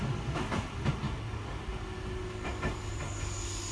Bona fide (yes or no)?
yes